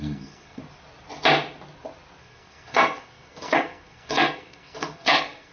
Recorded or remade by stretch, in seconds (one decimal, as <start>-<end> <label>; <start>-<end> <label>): 0.0-0.6 remade; 0.6-2.2 recorded; 2.2-5.5 remade